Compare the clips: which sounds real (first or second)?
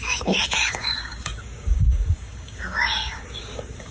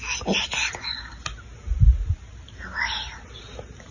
second